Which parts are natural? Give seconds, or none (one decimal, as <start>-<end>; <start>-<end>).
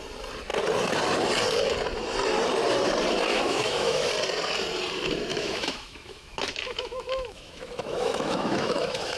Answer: 0.0-3.3; 4.1-5.3